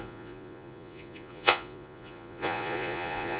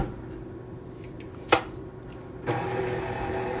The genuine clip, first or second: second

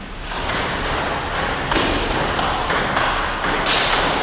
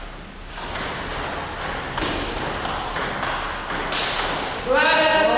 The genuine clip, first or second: second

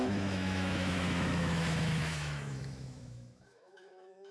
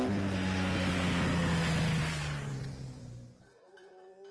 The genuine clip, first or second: second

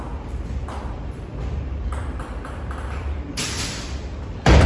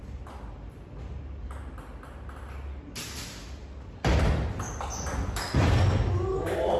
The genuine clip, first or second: second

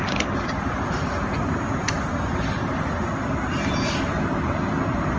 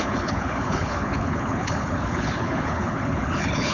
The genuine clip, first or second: first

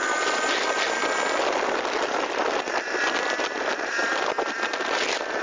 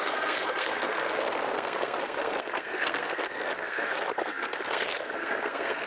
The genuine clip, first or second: first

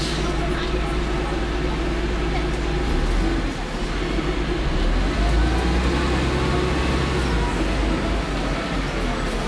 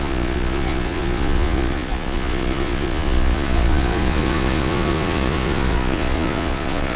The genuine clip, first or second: first